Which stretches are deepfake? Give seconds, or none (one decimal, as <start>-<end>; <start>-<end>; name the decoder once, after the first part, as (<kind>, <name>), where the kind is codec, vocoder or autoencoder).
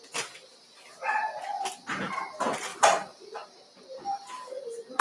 0.5-1.6 (vocoder, BigVGAN v2); 2.7-4.5